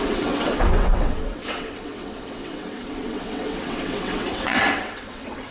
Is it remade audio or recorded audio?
remade